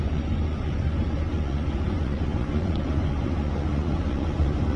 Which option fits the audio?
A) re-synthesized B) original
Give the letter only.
A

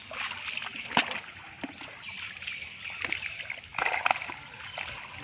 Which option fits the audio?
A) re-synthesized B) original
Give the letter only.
B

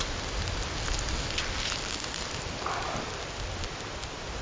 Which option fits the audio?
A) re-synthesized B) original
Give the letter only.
B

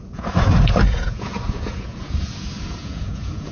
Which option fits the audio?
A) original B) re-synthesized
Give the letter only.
B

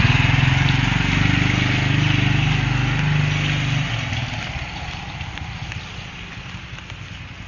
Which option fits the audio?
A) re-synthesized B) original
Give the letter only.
B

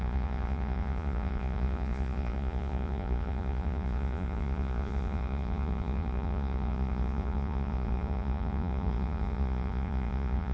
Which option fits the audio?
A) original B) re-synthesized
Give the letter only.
B